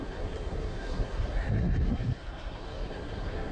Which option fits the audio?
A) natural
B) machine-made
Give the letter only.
B